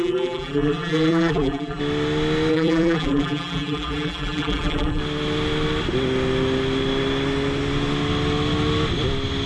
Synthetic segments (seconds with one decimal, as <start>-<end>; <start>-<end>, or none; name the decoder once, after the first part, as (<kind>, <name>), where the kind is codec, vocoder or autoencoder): 0.0-1.8 (vocoder, BigVGAN v2); 2.5-5.0